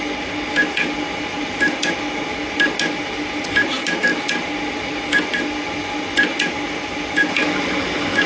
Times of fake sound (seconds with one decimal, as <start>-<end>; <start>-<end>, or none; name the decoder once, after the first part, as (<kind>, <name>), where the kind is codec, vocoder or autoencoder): none